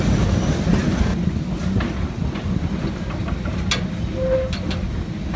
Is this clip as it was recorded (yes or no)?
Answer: yes